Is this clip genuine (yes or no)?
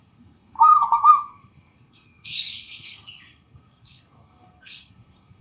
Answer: no